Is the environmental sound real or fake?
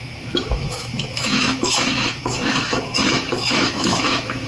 fake